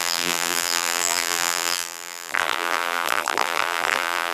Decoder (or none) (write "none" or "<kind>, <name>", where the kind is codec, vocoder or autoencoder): vocoder, BigVGAN v2